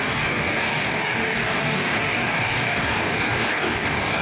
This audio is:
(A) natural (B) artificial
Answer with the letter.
B